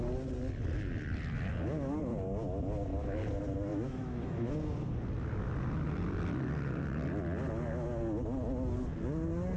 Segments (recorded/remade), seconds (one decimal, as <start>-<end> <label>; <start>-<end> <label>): 0.0-3.7 recorded; 3.7-4.5 remade; 4.5-9.6 recorded